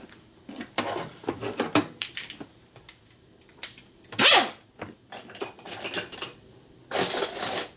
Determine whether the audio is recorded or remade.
recorded